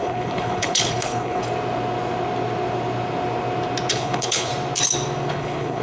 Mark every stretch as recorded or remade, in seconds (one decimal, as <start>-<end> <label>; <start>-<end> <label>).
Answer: 0.0-1.4 remade; 1.4-3.9 recorded; 3.9-4.5 remade; 4.5-5.3 recorded; 5.3-5.8 remade